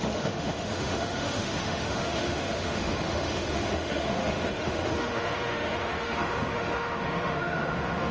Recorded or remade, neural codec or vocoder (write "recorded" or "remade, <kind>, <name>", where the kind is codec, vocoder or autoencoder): remade, autoencoder, DAC-VAE